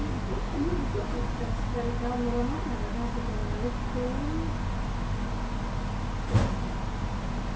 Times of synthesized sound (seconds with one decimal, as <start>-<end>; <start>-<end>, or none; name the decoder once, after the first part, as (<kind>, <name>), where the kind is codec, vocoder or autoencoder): none